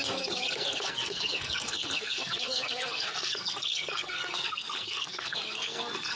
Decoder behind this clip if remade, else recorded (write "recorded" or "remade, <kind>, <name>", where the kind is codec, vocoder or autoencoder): remade, codec, SNAC